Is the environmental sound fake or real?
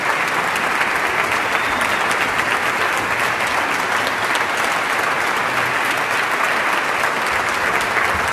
real